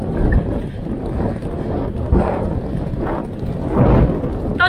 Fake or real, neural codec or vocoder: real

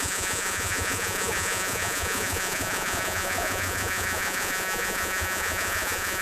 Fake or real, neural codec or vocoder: fake, vocoder, Vocos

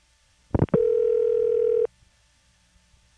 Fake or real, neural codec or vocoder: real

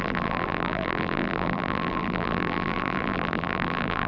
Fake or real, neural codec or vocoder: fake, vocoder, BigVGAN v2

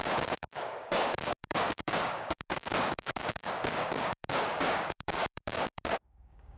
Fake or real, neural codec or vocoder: fake, codec, DAC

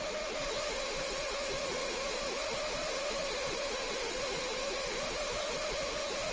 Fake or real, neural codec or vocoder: fake, vocoder, Vocos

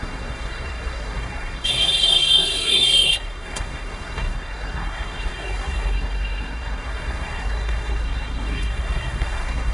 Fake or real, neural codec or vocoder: fake, codec, SNAC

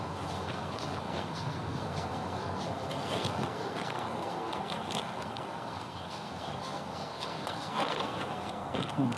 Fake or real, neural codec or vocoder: fake, codec, SNAC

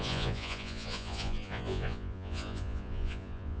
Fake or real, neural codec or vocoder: fake, vocoder, Vocos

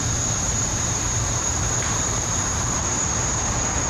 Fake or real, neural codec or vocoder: fake, vocoder, BigVGAN v2